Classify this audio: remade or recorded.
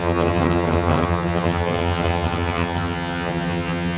remade